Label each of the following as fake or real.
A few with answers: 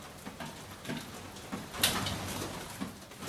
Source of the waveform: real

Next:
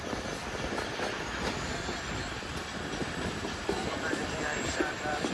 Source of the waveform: fake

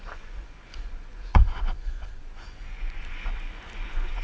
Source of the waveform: fake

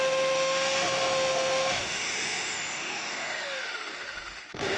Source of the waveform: fake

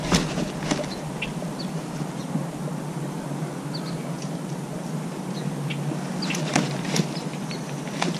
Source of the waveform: real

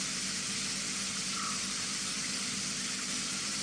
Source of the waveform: fake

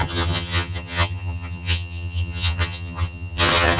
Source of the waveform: fake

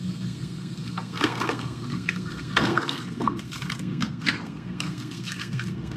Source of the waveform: fake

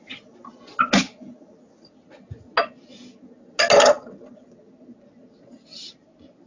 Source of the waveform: real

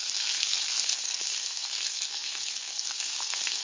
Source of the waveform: fake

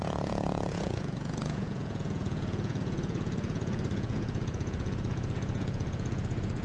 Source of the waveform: fake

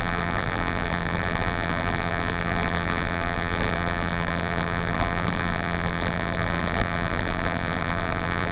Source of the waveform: fake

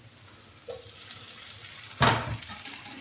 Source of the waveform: real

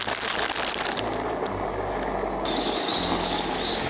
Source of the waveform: real